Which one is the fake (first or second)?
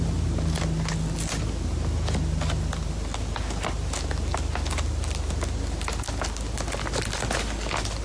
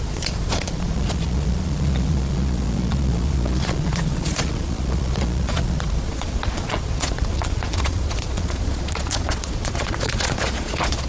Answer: second